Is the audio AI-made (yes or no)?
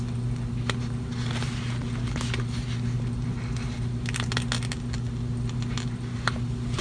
no